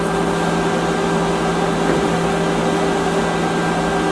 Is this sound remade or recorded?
recorded